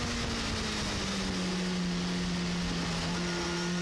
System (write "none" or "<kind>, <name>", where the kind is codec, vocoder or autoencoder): none